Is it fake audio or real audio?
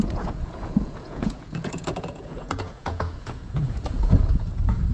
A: fake